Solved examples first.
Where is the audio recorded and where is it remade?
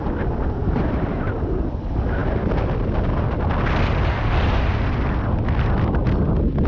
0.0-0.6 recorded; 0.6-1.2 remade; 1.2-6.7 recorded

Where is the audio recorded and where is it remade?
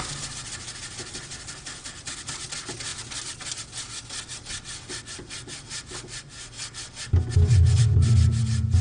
0.0-8.8 recorded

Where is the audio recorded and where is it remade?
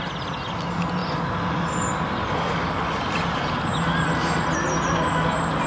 0.0-5.7 recorded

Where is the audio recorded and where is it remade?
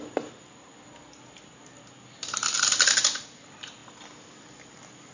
0.0-5.1 recorded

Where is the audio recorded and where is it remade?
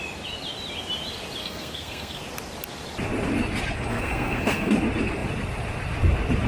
0.0-1.4 recorded; 1.4-2.2 remade; 2.2-3.9 recorded; 3.9-4.7 remade; 4.7-6.5 recorded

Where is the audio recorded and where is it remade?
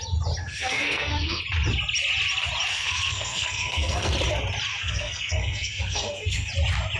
0.0-0.4 recorded; 0.4-1.4 remade; 1.4-2.7 recorded; 2.7-4.1 remade; 4.1-4.7 recorded; 4.7-6.5 remade; 6.5-7.0 recorded